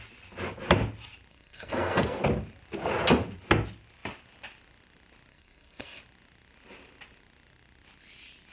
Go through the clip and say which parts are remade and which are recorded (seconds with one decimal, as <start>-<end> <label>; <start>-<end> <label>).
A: 0.0-1.3 recorded; 1.3-2.2 remade; 2.2-5.3 recorded; 5.3-6.0 remade; 6.0-8.5 recorded

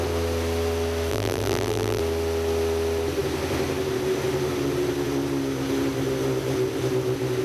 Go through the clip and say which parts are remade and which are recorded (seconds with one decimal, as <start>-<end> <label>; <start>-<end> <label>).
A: 0.0-1.1 recorded; 1.1-2.0 remade; 2.0-7.4 recorded

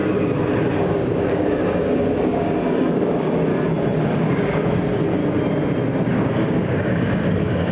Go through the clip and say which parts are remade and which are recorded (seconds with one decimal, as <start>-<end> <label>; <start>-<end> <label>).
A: 0.0-0.8 recorded; 0.8-3.5 remade; 3.5-4.0 recorded; 4.0-5.2 remade; 5.2-6.1 recorded; 6.1-7.7 remade

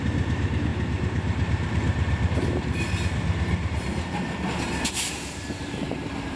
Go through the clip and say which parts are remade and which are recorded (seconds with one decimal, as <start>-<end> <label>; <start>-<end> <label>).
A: 0.0-6.4 remade

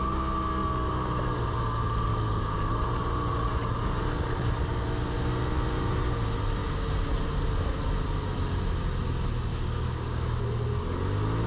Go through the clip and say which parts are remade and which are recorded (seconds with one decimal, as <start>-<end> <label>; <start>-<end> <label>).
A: 0.0-2.1 recorded; 2.1-2.7 remade; 2.7-9.5 recorded; 9.5-10.4 remade; 10.4-11.5 recorded

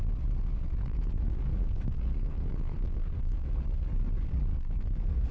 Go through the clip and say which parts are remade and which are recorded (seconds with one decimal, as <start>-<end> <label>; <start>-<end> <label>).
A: 0.0-0.8 recorded; 0.8-4.0 remade; 4.0-4.5 recorded; 4.5-5.3 remade